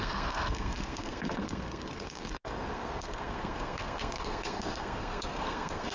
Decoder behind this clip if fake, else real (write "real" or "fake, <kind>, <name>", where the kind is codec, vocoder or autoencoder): fake, codec, SNAC